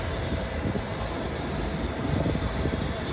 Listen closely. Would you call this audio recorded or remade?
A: recorded